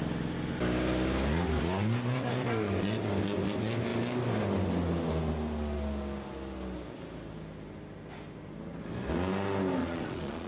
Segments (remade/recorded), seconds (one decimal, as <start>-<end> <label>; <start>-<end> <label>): 0.0-9.8 recorded; 9.8-10.5 remade